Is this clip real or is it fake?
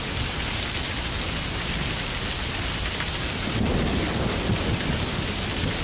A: real